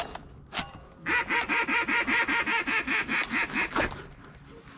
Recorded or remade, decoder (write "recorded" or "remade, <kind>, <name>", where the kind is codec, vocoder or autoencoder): recorded